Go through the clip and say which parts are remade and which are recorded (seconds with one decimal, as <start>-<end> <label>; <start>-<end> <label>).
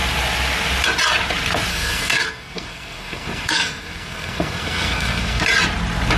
0.0-1.7 recorded; 1.7-5.4 remade; 5.4-6.2 recorded